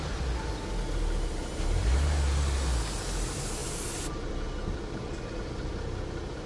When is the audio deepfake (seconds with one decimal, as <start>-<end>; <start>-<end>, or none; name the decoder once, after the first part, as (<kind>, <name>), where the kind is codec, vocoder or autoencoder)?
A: none